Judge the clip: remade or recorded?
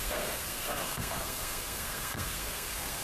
remade